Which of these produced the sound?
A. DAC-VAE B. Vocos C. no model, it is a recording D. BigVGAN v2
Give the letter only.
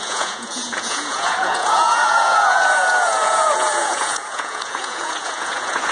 B